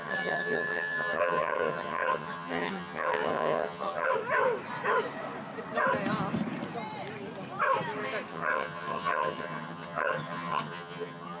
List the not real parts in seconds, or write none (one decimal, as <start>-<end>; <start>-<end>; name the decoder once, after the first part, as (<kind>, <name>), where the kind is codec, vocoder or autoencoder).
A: 0.0-4.1 (vocoder, HiFi-GAN); 8.3-11.4